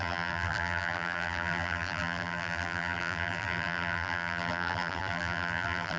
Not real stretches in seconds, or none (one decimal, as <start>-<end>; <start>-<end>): 0.0-6.0